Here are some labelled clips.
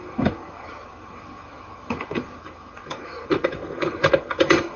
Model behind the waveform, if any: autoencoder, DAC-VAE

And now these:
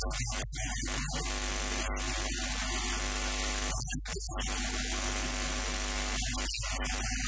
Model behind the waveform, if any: none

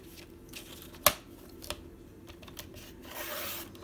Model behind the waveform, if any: none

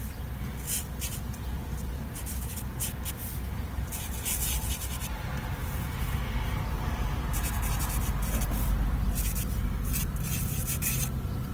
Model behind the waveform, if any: none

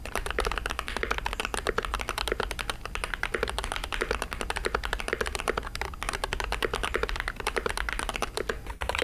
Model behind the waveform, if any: none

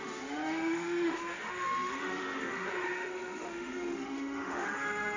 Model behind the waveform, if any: autoencoder, DAC-VAE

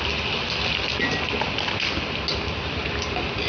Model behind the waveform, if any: none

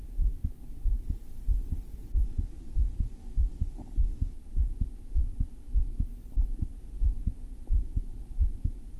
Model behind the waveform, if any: none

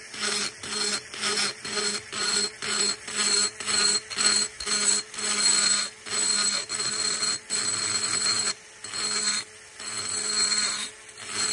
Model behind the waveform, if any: none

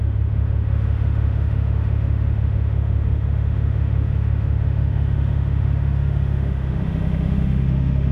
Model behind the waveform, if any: autoencoder, DAC-VAE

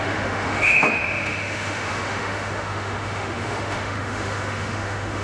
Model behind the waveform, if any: autoencoder, DAC-VAE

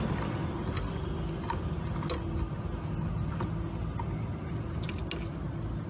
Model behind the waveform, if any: none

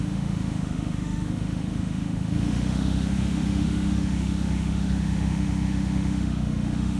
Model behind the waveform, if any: autoencoder, DAC-VAE